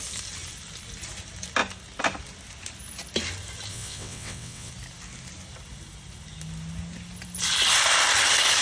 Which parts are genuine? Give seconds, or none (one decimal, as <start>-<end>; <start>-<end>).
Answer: 0.0-3.7; 4.7-8.6